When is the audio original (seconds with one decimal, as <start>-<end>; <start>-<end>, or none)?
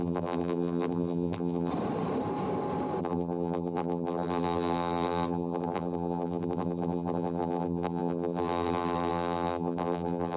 1.7-3.0